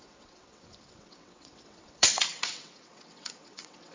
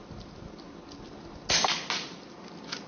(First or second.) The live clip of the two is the second